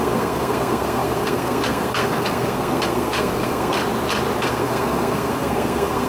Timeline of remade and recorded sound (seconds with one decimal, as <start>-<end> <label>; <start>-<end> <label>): 0.0-3.8 remade; 3.8-4.4 recorded; 4.4-6.1 remade